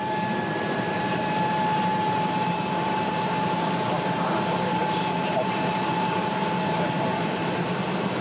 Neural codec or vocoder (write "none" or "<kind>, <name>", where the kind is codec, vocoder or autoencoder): vocoder, BigVGAN v2